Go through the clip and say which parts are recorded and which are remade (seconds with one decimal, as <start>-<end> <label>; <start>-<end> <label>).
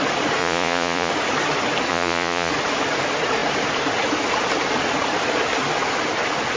0.0-0.4 recorded; 0.4-1.1 remade; 1.1-1.9 recorded; 1.9-2.5 remade; 2.5-6.6 recorded